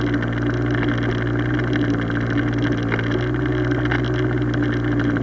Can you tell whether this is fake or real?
real